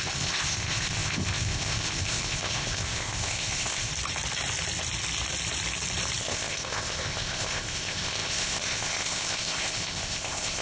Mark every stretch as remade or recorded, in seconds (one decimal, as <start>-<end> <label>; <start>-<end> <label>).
0.0-3.9 remade; 3.9-6.2 recorded; 6.2-10.6 remade